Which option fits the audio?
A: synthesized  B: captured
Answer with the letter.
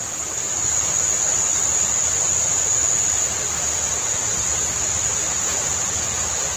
B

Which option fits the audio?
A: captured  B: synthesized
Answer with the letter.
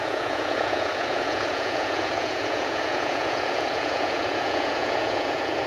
B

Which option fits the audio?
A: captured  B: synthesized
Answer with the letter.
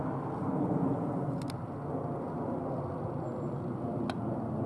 A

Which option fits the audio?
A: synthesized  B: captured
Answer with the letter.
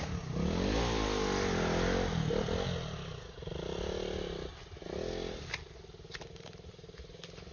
B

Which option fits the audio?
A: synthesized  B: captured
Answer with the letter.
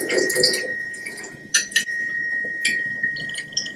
A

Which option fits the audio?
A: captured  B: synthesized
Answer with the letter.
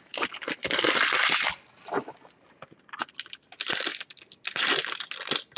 A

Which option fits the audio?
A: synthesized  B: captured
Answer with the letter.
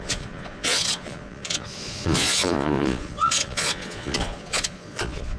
A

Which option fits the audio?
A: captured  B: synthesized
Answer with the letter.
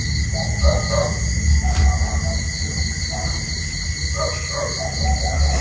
A